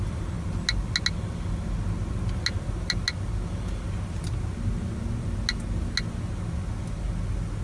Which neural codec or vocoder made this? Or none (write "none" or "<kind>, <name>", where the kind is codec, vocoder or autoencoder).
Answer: none